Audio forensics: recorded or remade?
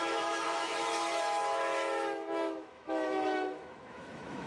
remade